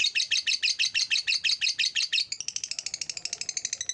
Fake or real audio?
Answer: real